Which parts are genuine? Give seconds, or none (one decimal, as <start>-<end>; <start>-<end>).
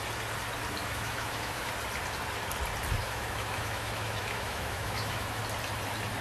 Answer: 0.0-0.8; 1.7-3.0; 5.4-6.2